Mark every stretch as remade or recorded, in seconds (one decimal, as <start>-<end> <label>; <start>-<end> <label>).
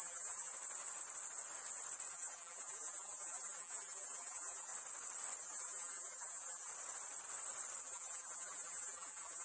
0.0-0.5 remade; 0.5-2.1 recorded; 2.1-4.7 remade; 4.7-5.4 recorded; 5.4-6.7 remade; 6.7-7.8 recorded; 7.8-9.4 remade